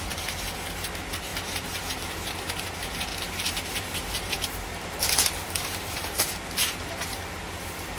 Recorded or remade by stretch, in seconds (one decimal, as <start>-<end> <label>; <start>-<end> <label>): 0.0-3.1 recorded; 3.1-6.9 remade; 6.9-8.0 recorded

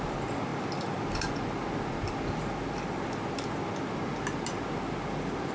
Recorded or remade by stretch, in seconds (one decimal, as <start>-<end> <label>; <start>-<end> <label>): 0.0-5.5 recorded

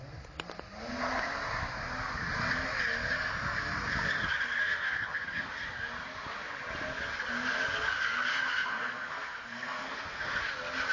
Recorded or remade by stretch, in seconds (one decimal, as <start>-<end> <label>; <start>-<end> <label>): 0.0-4.6 recorded; 4.6-5.5 remade; 5.5-8.3 recorded; 8.3-10.4 remade; 10.4-10.9 recorded

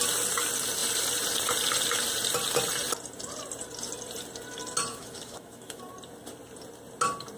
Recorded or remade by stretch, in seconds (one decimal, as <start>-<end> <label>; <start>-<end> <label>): 0.0-4.9 recorded; 4.9-5.8 remade; 5.8-7.4 recorded